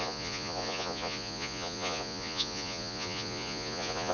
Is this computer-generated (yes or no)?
yes